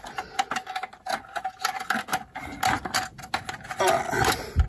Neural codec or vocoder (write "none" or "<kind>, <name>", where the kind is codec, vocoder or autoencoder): none